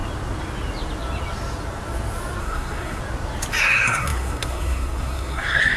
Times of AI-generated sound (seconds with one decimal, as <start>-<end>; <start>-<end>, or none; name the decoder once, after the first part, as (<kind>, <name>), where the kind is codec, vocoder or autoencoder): 2.4-3.0 (codec, SNAC); 3.6-5.8